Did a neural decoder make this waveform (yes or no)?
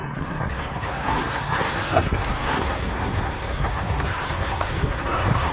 yes